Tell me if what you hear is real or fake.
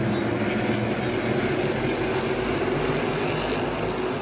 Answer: real